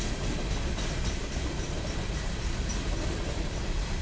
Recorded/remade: recorded